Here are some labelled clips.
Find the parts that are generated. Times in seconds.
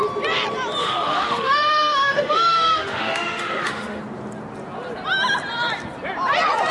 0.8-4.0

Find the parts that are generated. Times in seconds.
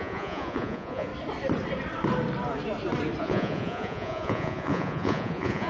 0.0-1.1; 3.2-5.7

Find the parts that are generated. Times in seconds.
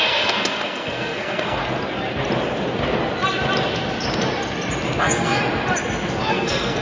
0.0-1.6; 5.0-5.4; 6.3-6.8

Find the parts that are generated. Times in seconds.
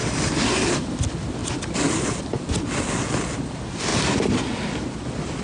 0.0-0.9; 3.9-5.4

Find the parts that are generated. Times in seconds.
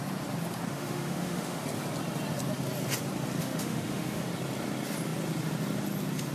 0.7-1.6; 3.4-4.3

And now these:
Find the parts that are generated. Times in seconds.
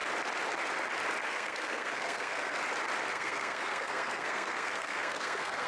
1.3-2.6; 3.1-5.7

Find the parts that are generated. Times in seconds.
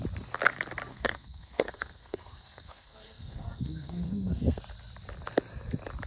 0.9-4.6